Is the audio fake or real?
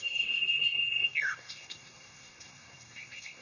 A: fake